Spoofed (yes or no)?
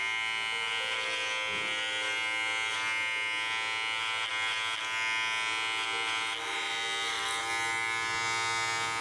no